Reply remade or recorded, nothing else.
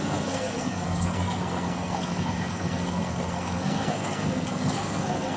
remade